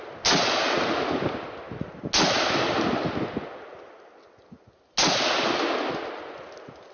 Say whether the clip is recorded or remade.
recorded